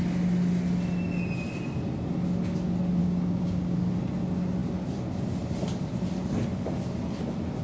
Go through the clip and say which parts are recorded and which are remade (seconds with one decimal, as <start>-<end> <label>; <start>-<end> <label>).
0.0-3.0 recorded; 3.0-3.9 remade; 3.9-7.6 recorded

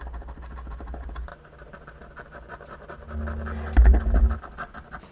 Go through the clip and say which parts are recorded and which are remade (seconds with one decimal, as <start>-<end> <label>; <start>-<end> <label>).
0.0-5.1 recorded

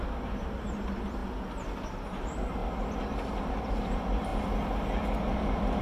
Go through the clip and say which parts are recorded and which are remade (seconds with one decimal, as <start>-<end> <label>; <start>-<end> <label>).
0.0-1.2 remade; 1.2-1.9 recorded; 1.9-2.6 remade; 2.6-3.4 recorded; 3.4-4.3 remade; 4.3-5.8 recorded

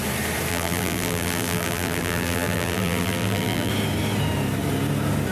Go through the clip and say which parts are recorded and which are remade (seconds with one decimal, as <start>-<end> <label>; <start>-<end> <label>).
0.0-0.5 recorded; 0.5-3.7 remade; 3.7-5.3 recorded

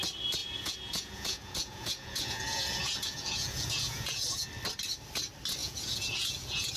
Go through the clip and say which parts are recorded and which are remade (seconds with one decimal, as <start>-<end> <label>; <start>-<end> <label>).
0.0-0.4 recorded; 0.4-4.5 remade; 4.5-5.6 recorded; 5.6-6.8 remade

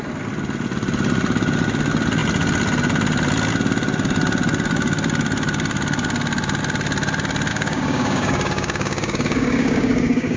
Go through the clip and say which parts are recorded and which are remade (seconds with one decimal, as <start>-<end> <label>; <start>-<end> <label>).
0.0-7.5 recorded; 7.5-10.4 remade

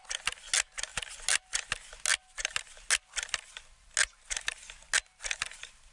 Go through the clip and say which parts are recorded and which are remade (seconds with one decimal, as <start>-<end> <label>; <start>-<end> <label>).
0.0-5.9 recorded

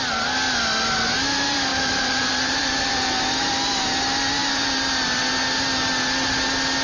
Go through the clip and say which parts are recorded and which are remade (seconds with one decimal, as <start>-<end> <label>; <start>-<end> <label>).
0.0-1.7 recorded; 1.7-3.2 remade; 3.2-4.4 recorded; 4.4-5.2 remade; 5.2-6.8 recorded